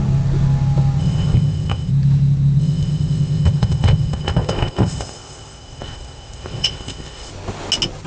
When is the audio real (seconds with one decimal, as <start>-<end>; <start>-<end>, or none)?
0.0-1.0; 1.9-2.6; 7.3-8.1